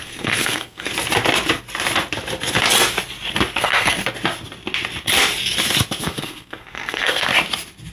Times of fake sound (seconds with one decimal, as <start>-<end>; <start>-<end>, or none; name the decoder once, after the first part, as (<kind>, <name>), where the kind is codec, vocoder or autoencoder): 0.0-0.9 (codec, SNAC); 3.6-4.0; 6.0-7.3